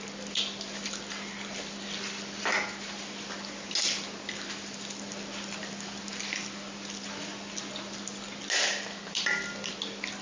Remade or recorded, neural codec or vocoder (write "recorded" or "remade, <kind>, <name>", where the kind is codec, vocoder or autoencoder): recorded